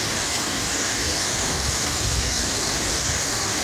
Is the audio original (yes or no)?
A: no